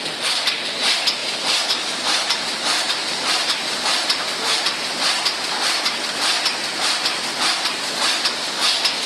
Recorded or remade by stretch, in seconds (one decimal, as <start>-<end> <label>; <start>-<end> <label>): 0.0-1.2 recorded; 1.2-4.6 remade; 4.6-9.1 recorded